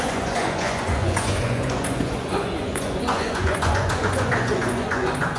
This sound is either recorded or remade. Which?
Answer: remade